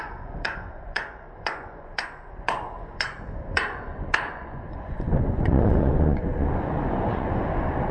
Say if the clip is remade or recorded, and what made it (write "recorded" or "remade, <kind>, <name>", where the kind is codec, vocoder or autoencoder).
remade, vocoder, Vocos